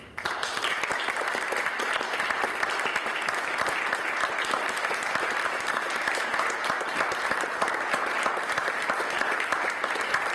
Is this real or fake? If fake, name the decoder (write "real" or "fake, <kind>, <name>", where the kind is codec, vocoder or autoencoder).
real